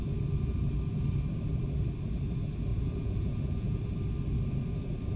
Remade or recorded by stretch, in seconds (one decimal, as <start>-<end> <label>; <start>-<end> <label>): 0.0-2.7 recorded; 2.7-3.8 remade; 3.8-5.2 recorded